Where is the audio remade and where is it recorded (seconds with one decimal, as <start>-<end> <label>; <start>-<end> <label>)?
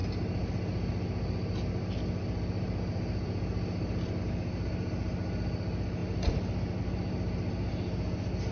0.0-8.5 recorded